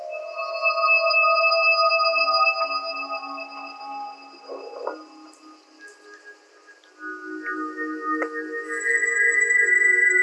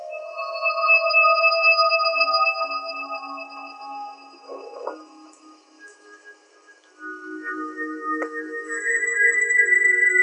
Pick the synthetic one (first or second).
second